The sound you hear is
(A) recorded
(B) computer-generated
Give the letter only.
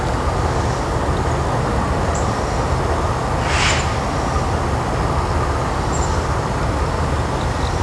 A